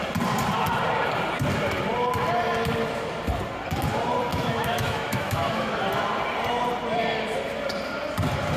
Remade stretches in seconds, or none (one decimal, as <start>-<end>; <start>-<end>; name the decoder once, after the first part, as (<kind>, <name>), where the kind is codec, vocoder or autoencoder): 4.3-5.7 (autoencoder, DAC-VAE)